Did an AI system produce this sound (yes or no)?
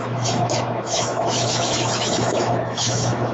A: yes